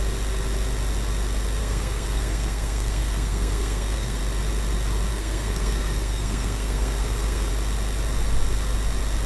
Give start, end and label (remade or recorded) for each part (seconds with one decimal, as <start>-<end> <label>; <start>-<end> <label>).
0.0-1.6 recorded; 1.6-4.2 remade; 4.2-5.1 recorded; 5.1-7.5 remade; 7.5-9.3 recorded